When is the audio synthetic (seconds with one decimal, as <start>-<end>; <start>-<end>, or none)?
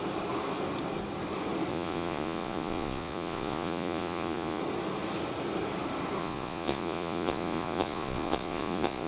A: 1.7-4.6; 6.2-9.1